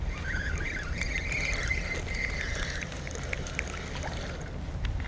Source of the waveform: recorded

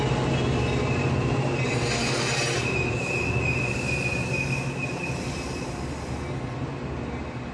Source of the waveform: recorded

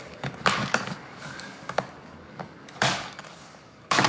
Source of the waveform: remade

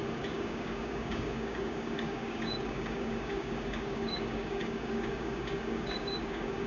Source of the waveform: remade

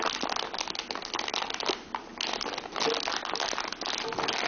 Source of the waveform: recorded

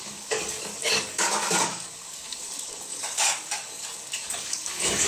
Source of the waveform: remade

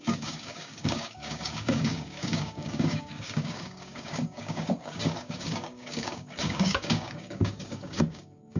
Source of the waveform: remade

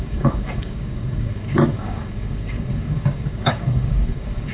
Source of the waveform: remade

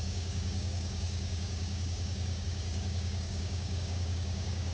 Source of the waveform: remade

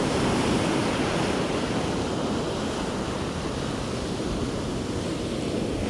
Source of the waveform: recorded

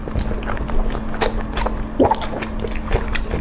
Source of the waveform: recorded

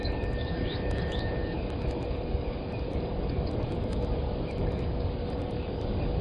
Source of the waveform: remade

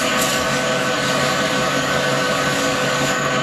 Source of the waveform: remade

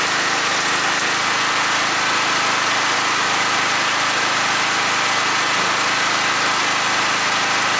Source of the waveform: recorded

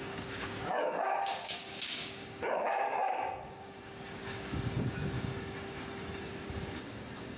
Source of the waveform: remade